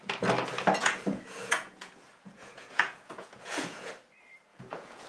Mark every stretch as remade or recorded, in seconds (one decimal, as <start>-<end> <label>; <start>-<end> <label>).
0.0-0.8 recorded; 0.8-3.9 remade; 3.9-4.5 recorded; 4.5-5.1 remade